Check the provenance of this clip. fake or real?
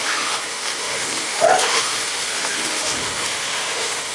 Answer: fake